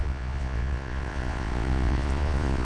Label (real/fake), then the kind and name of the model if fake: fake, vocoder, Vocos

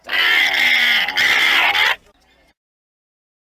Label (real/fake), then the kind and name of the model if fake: real